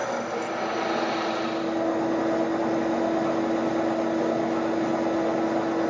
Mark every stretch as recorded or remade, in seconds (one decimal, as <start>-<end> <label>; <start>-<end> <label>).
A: 0.0-5.9 recorded

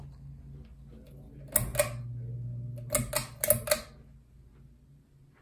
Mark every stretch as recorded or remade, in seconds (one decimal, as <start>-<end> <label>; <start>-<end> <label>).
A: 0.0-5.4 recorded

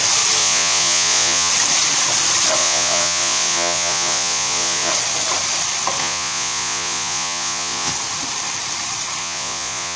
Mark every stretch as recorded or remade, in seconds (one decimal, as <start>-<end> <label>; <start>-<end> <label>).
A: 0.0-0.4 recorded; 0.4-1.5 remade; 1.5-2.6 recorded; 2.6-4.9 remade; 4.9-6.0 recorded; 6.0-7.9 remade; 7.9-9.2 recorded; 9.2-10.0 remade

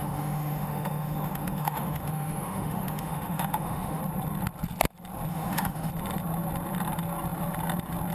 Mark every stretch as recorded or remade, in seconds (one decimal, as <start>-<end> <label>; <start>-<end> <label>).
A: 0.0-4.0 remade; 4.0-5.3 recorded; 5.3-5.9 remade; 5.9-8.1 recorded

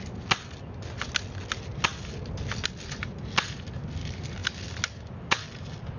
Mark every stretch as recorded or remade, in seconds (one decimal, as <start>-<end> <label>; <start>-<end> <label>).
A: 0.0-6.0 recorded

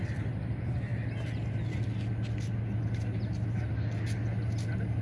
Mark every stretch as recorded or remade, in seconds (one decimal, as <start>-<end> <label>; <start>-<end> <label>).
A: 0.0-5.0 recorded

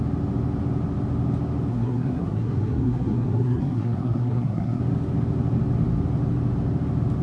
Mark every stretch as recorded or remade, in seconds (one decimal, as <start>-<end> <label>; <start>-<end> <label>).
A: 0.0-1.7 recorded; 1.7-4.8 remade; 4.8-7.2 recorded